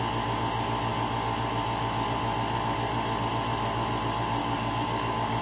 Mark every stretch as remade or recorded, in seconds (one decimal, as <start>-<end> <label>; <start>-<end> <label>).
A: 0.0-4.4 recorded; 4.4-5.4 remade